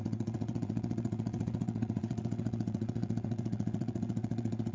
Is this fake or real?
fake